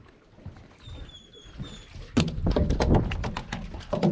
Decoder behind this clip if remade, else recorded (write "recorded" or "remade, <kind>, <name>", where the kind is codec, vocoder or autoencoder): recorded